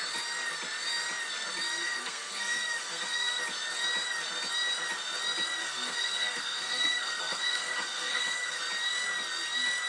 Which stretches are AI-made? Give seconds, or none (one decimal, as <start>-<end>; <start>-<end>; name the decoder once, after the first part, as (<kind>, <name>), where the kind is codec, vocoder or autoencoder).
1.8-3.4 (codec, SNAC); 5.6-8.6

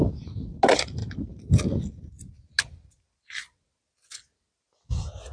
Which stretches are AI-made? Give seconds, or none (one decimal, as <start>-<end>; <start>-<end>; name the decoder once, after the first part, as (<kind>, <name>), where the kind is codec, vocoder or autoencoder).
none

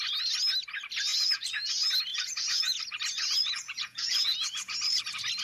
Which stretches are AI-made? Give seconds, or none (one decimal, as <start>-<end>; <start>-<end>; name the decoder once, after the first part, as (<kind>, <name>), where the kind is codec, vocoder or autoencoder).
1.1-1.7 (vocoder, Vocos); 2.1-2.8; 3.4-5.0

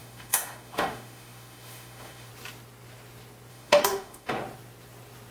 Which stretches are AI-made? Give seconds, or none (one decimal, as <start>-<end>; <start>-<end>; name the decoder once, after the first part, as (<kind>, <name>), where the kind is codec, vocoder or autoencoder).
0.0-2.3 (autoencoder, DAC-VAE); 3.5-4.3